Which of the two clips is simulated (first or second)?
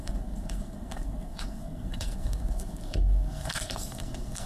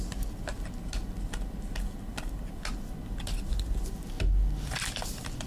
first